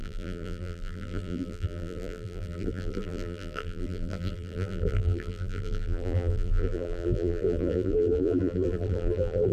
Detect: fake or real fake